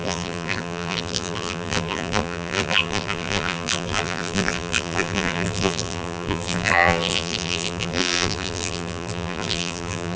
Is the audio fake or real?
fake